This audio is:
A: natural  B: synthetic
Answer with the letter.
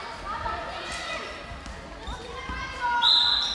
A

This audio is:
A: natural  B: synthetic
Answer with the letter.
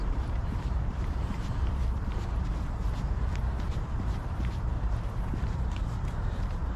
B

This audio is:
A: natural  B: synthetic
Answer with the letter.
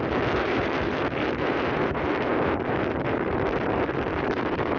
B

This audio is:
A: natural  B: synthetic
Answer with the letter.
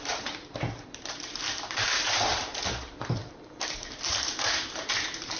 B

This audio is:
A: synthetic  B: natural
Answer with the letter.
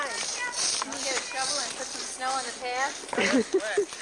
B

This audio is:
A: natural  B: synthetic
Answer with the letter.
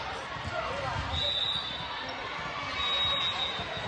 A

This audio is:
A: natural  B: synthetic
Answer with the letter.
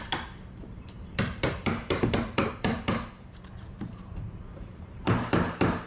B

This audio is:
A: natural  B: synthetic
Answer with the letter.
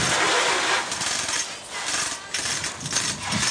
A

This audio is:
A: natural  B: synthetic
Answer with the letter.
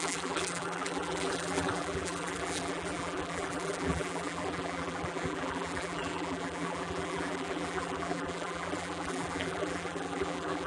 B